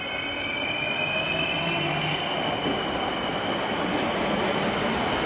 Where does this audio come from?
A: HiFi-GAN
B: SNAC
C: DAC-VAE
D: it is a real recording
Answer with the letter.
D